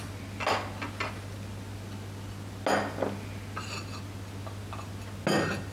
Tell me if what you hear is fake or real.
real